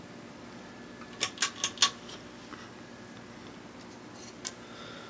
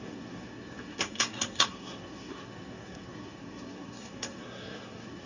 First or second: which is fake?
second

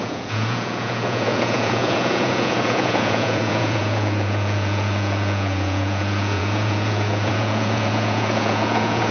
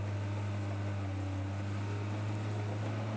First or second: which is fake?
first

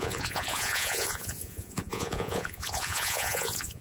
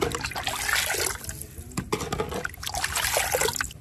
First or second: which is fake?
first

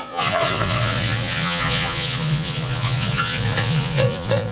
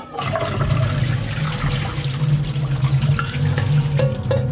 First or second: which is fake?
first